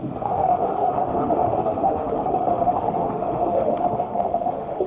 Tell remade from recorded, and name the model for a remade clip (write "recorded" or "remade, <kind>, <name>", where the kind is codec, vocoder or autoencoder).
remade, autoencoder, DAC-VAE